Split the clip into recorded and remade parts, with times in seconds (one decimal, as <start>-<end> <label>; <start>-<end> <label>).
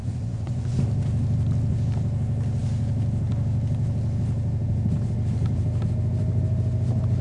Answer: 0.0-0.8 remade; 0.8-7.2 recorded